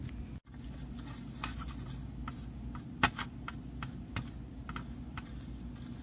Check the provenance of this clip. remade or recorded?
recorded